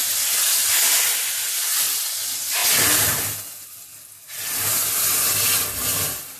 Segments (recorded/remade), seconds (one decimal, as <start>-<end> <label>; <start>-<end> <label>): 0.0-6.4 recorded